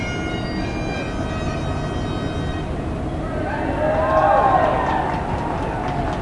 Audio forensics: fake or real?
real